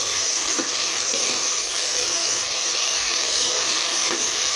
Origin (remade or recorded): remade